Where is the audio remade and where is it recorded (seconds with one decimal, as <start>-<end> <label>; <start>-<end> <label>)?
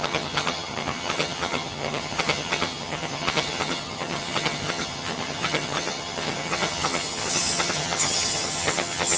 0.0-9.2 remade